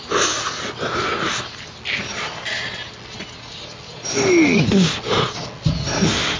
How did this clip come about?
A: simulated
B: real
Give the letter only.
B